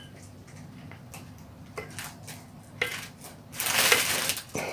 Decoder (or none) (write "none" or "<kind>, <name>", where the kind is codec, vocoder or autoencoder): none